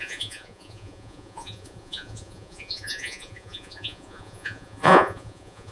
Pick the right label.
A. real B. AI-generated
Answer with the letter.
B